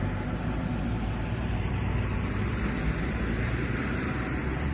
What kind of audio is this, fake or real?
fake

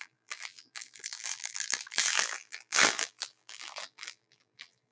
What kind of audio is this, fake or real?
fake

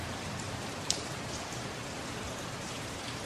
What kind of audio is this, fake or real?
fake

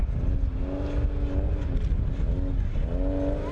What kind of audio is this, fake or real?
real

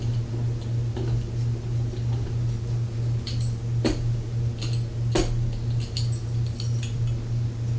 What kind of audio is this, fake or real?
real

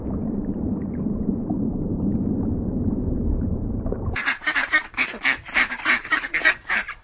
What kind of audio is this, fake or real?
fake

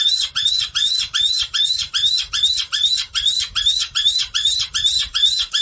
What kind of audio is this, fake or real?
fake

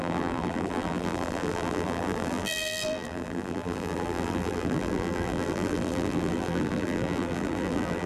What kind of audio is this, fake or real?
fake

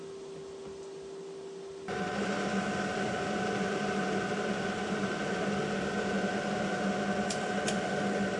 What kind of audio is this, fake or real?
real